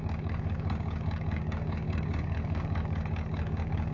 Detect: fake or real fake